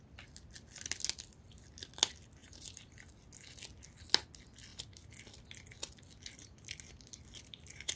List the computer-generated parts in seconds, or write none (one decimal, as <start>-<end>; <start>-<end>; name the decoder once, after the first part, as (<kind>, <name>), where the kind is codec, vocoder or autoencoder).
2.4-3.1 (vocoder, BigVGAN v2)